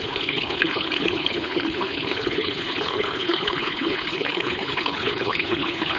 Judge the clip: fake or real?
fake